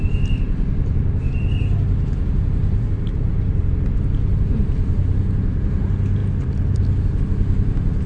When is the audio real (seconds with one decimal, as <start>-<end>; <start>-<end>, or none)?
0.0-2.6; 3.3-8.1